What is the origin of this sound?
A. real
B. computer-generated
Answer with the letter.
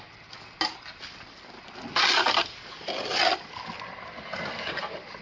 A